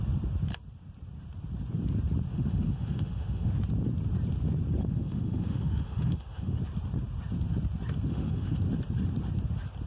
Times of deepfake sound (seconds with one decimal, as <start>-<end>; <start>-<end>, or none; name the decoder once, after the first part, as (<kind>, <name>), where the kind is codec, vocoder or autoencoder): 2.3-3.5 (autoencoder, DAC-VAE); 4.8-6.6; 8.1-8.6